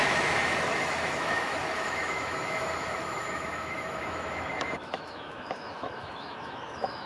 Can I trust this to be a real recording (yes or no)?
no